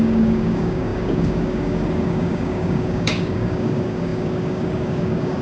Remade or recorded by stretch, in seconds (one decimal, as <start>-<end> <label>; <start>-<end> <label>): 0.0-5.4 remade

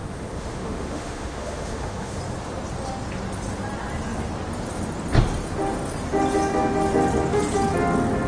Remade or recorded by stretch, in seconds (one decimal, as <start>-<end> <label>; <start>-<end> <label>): 0.0-2.2 remade; 2.2-8.3 recorded

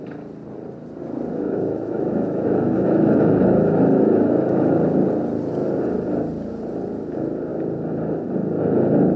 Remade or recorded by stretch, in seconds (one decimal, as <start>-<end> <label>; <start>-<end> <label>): 0.0-1.3 recorded; 1.3-4.7 remade; 4.7-9.2 recorded

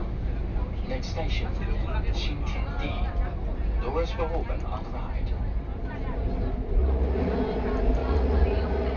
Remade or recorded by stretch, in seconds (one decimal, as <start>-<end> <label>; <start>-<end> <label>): 0.0-6.8 recorded; 6.8-7.4 remade; 7.4-8.0 recorded; 8.0-9.0 remade

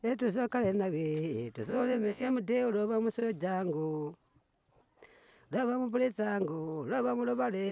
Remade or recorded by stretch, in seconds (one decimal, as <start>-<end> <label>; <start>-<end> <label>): 0.0-1.7 recorded; 1.7-2.3 remade; 2.3-7.7 recorded